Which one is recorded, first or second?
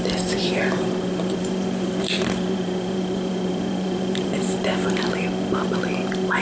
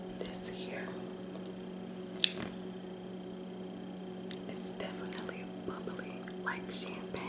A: second